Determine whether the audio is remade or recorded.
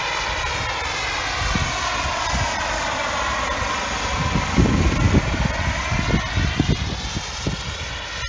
recorded